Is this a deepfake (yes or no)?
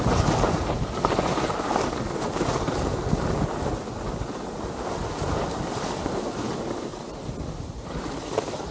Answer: no